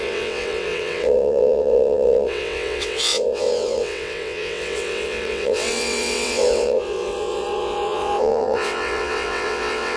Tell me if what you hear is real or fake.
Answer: fake